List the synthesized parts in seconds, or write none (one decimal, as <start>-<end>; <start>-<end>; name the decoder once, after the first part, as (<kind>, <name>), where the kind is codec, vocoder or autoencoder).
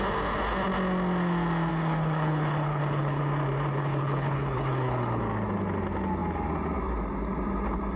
1.7-3.2 (codec, HILCodec); 3.8-5.2